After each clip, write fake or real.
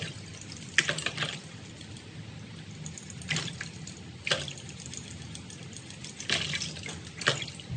real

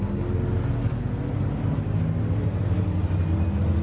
real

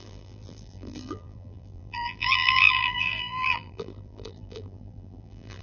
fake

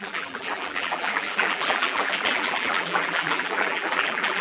fake